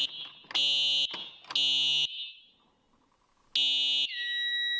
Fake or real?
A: real